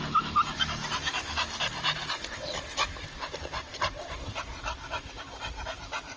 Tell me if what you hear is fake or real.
real